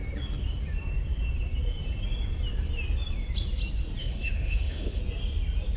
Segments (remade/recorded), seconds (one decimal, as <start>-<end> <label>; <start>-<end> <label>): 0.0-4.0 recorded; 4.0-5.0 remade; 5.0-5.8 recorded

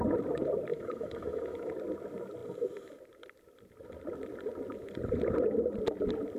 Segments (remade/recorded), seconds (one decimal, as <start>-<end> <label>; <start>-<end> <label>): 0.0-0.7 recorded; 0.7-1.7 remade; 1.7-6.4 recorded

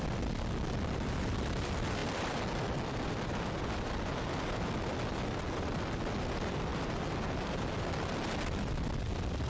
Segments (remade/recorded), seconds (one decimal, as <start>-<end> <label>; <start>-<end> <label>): 0.0-9.5 recorded

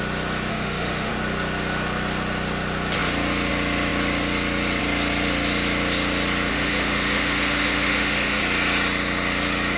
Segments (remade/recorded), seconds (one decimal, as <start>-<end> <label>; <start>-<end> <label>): 0.0-0.5 recorded; 0.5-1.1 remade; 1.1-6.5 recorded; 6.5-8.4 remade; 8.4-9.8 recorded

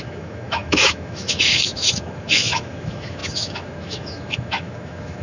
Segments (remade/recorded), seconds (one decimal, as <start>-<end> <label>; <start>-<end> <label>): 0.0-5.2 remade